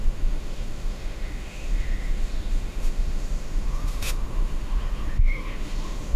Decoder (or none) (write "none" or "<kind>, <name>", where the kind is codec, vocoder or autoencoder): autoencoder, DAC-VAE